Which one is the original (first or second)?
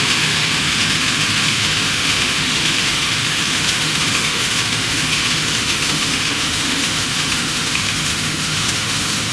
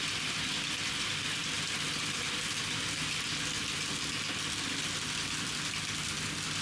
second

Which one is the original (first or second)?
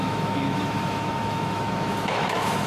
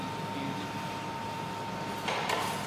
second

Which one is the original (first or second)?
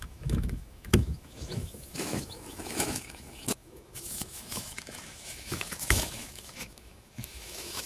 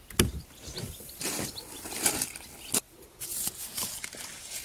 second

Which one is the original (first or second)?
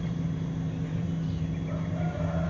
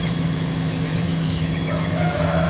first